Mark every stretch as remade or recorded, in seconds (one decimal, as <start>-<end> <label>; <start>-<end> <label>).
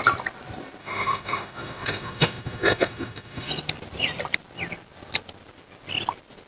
0.0-0.8 recorded; 0.8-3.5 remade; 3.5-6.5 recorded